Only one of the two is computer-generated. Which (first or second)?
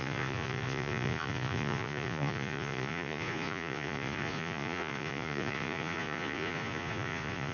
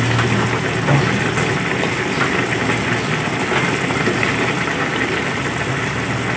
first